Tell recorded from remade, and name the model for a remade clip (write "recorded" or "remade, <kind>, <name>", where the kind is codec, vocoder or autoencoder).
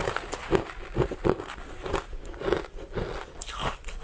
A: recorded